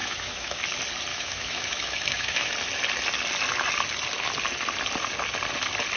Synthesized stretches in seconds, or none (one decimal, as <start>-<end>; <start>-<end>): 0.0-0.6; 1.1-2.5